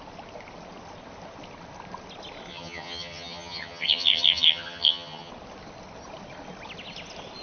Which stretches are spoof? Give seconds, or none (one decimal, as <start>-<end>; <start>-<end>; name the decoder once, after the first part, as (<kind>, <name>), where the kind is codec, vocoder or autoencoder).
2.5-5.3 (vocoder, HiFi-GAN)